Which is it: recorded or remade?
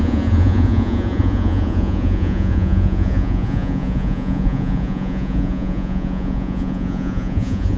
remade